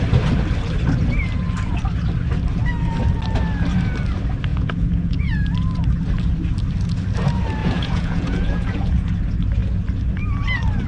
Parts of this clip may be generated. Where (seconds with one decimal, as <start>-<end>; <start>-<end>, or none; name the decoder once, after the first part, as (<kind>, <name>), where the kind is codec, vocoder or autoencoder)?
4.5-5.3 (vocoder, Vocos); 7.6-9.1